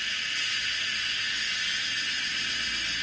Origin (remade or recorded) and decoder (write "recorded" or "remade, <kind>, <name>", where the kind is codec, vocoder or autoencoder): recorded